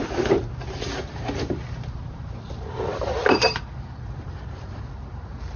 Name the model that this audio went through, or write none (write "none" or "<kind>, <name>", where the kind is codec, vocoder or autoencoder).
vocoder, BigVGAN v2